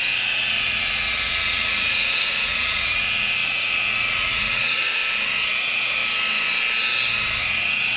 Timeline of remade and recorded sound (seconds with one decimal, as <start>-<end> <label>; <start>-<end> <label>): 0.0-5.0 remade; 5.0-5.6 recorded; 5.6-6.0 remade; 6.0-7.4 recorded; 7.4-8.0 remade